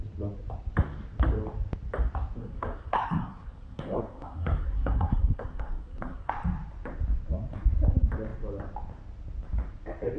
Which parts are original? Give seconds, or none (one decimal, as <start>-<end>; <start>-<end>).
0.0-2.4; 6.3-10.2